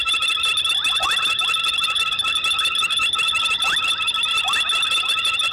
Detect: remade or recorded recorded